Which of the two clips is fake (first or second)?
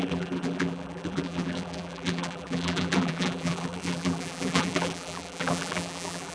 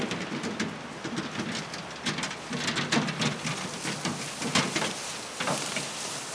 first